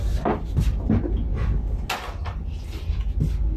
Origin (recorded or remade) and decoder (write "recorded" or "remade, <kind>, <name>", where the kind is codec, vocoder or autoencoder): recorded